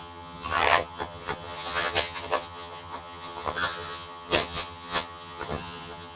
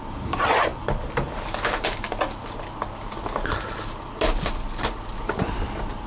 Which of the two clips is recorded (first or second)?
second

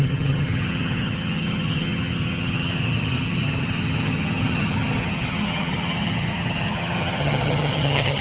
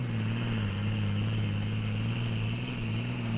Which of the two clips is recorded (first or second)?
second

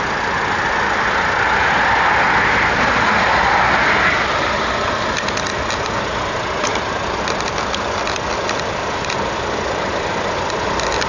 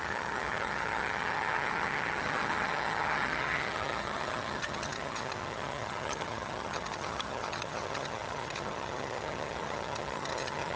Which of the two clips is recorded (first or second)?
first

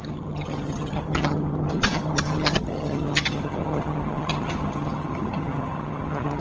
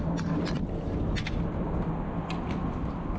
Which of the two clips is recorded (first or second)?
second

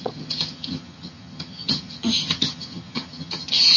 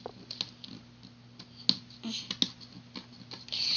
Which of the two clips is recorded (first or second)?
second